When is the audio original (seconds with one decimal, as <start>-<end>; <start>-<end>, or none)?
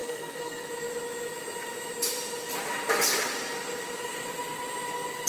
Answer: 0.7-5.3